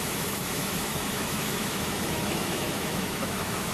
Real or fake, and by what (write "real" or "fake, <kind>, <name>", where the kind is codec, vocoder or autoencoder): fake, autoencoder, DAC-VAE